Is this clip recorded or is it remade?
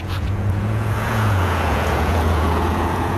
remade